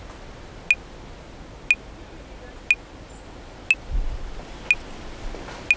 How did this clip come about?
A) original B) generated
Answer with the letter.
A